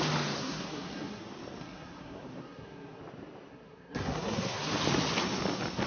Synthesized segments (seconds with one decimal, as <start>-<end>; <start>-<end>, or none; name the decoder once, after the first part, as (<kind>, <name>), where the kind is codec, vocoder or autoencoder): 0.4-1.2 (codec, SNAC); 1.6-3.0; 3.5-4.7